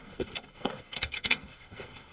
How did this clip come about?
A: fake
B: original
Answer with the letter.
A